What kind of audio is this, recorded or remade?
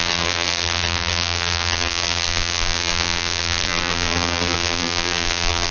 remade